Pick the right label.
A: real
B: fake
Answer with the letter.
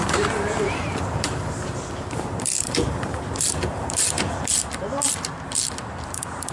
B